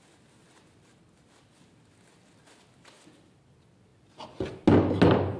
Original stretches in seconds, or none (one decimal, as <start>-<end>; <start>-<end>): 0.0-5.4